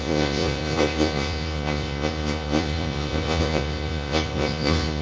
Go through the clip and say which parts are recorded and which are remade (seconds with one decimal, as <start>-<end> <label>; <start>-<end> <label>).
0.0-5.0 remade